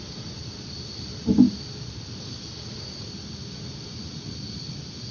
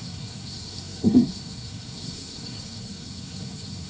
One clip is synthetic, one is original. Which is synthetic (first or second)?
second